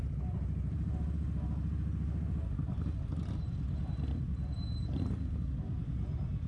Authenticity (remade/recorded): recorded